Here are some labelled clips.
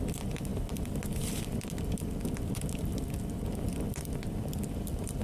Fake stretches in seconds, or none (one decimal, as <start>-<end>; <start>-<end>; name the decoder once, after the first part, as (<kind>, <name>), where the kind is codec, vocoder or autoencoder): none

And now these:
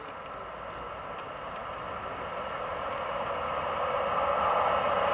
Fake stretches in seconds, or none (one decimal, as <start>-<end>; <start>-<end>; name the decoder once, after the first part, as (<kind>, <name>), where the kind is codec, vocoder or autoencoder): none

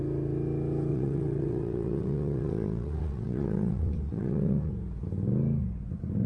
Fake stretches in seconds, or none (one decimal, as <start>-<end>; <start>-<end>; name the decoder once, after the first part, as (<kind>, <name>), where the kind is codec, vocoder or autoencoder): 0.9-4.7 (vocoder, WaveNeXt)

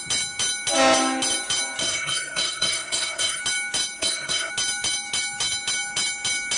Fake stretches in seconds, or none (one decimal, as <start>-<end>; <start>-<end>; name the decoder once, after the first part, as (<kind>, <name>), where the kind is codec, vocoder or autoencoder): 1.8-3.4 (codec, SNAC); 4.0-4.5

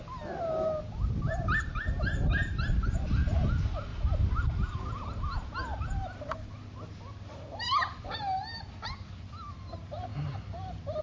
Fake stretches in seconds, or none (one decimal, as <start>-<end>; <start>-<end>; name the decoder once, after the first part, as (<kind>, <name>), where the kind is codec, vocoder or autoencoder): 7.7-8.4 (vocoder, BigVGAN v2); 10.1-11.0

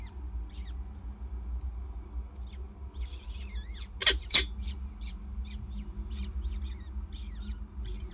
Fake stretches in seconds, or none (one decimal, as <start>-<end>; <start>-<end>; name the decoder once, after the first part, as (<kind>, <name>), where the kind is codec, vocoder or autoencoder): none